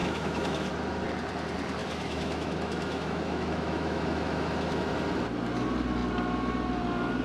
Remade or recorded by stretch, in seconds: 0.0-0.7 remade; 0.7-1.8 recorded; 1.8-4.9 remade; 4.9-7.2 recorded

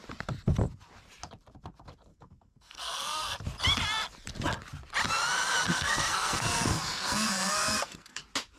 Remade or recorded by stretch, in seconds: 0.0-2.1 recorded; 2.1-3.4 remade; 3.4-5.7 recorded; 5.7-8.2 remade; 8.2-8.6 recorded